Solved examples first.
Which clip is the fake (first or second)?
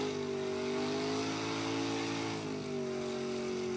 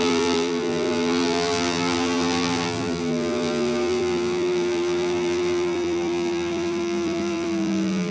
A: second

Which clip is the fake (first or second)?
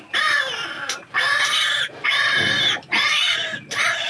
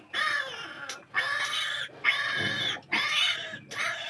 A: first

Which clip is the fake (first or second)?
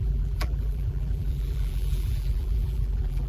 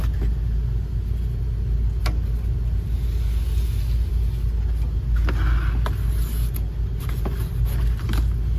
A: first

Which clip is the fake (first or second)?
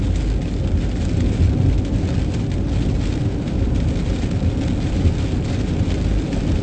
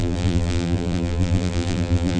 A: second